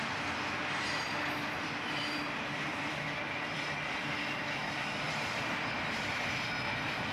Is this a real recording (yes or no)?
no